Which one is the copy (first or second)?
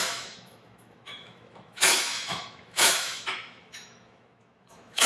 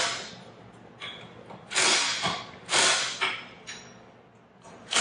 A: first